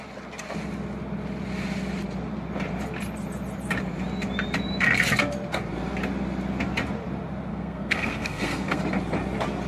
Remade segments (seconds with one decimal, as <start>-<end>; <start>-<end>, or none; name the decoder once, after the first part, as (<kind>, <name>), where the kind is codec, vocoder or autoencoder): 7.5-8.8 (codec, SNAC)